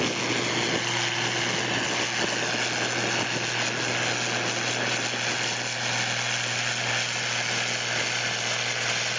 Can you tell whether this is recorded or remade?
recorded